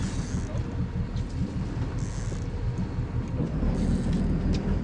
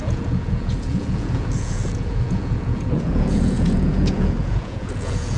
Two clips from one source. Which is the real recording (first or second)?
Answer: first